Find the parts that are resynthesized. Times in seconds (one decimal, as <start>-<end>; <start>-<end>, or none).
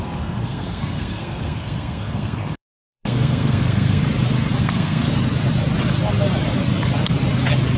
0.0-4.0; 4.6-5.1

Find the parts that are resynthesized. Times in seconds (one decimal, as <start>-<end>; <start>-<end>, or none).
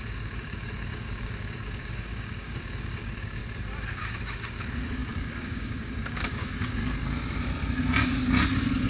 0.0-3.4; 3.9-6.8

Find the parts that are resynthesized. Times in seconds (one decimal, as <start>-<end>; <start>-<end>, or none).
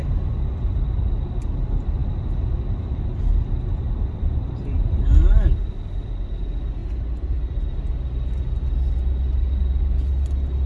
none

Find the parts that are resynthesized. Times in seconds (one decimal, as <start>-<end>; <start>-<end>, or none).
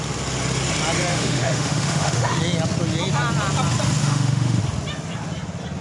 1.1-2.4; 4.0-4.6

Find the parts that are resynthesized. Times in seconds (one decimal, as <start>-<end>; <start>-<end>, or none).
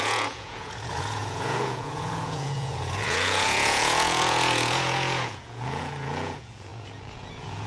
0.0-7.7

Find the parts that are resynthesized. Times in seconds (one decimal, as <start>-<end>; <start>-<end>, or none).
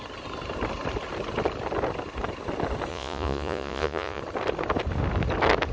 2.9-4.2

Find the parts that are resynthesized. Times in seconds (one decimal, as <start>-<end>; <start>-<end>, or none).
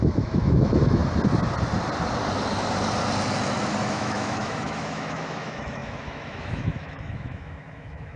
0.0-1.0; 3.9-8.2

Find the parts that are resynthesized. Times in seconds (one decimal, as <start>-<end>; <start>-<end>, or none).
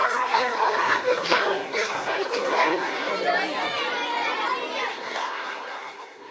0.0-3.1; 4.9-6.3